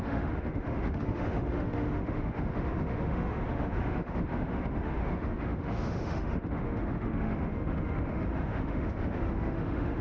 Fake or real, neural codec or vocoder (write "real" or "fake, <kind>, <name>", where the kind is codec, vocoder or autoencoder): fake, autoencoder, DAC-VAE